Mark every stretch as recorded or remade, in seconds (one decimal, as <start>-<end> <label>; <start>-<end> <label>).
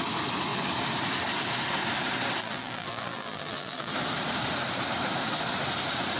0.0-2.4 recorded; 2.4-3.9 remade; 3.9-6.2 recorded